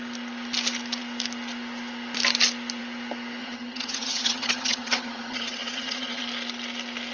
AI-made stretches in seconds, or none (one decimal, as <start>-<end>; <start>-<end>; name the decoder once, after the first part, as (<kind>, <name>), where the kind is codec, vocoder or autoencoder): 3.4-6.2 (vocoder, HiFi-GAN)